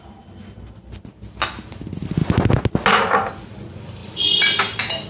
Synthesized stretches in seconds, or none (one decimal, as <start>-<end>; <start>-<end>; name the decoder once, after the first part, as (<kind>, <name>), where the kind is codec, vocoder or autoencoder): none